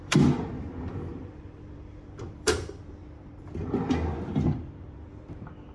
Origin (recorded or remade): remade